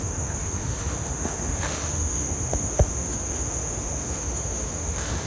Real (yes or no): no